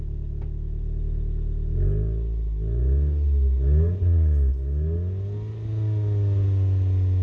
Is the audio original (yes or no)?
yes